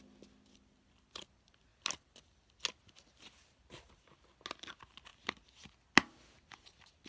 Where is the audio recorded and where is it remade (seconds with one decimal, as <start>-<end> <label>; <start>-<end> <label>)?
0.0-7.1 recorded